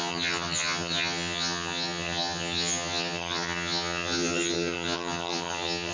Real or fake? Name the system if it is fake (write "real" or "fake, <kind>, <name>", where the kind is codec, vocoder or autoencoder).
fake, vocoder, HiFi-GAN